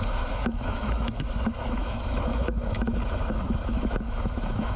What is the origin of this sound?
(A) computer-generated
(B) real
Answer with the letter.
A